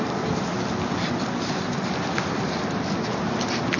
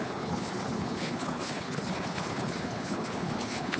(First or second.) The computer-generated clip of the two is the second